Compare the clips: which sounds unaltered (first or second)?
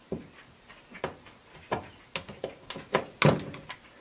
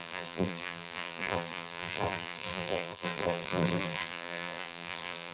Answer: first